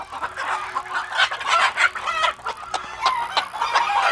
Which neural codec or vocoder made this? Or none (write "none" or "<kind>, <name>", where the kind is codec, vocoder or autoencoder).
none